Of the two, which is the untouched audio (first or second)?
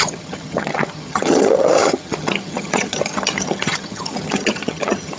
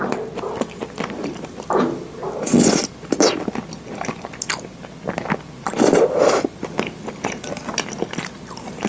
second